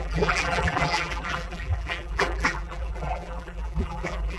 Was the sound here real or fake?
fake